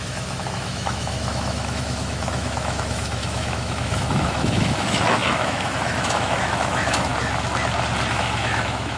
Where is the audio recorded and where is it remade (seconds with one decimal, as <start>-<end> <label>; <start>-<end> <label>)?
0.0-7.1 remade; 7.1-8.1 recorded; 8.1-9.0 remade